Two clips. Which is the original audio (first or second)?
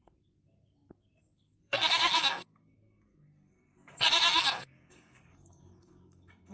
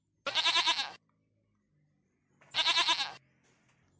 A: second